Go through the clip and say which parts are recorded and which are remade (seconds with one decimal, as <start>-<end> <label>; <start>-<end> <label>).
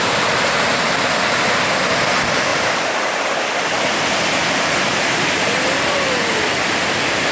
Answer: 0.0-2.5 recorded; 2.5-3.4 remade; 3.4-4.4 recorded; 4.4-6.3 remade; 6.3-7.3 recorded